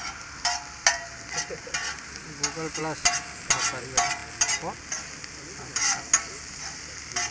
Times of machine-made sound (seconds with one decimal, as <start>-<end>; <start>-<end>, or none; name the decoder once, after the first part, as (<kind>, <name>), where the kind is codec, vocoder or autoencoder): none

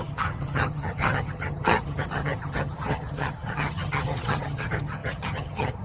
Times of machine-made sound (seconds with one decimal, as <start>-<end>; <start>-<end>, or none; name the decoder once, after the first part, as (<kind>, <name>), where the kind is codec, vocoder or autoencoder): 0.0-5.8 (vocoder, HiFi-GAN)